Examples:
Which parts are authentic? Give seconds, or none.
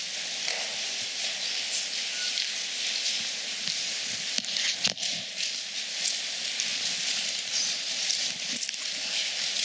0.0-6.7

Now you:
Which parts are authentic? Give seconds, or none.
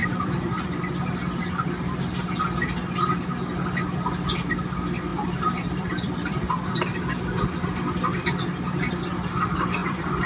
0.9-5.1; 6.8-9.8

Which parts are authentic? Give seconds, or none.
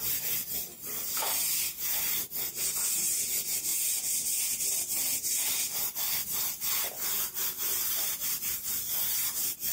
0.0-9.7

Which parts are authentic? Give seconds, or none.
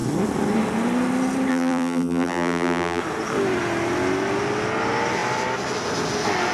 0.0-1.5; 3.0-6.5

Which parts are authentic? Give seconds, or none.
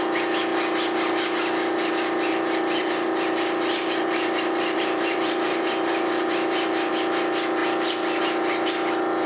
0.0-2.3; 6.9-9.3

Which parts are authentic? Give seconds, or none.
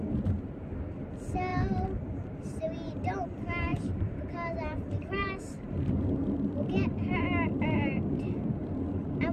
0.0-1.5; 2.3-3.7; 5.9-9.3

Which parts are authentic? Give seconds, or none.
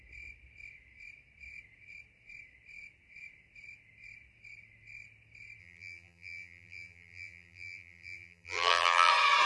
0.0-5.6; 9.1-9.5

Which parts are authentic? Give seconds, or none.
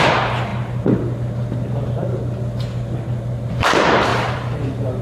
0.0-4.1